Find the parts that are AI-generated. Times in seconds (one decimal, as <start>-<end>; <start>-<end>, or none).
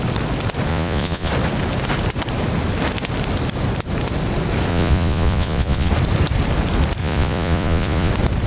0.7-1.3; 4.7-5.9; 7.0-8.1